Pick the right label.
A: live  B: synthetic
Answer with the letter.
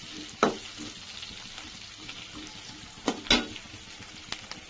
A